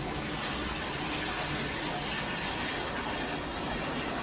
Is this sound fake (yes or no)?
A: no